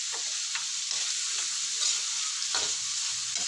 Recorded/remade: recorded